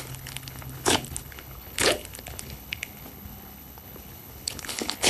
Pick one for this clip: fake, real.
fake